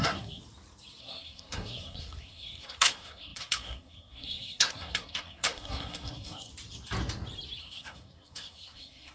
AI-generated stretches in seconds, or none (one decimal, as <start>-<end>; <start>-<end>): 0.0-0.4; 1.0-6.5; 7.6-9.1